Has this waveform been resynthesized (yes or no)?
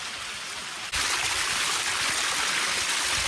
no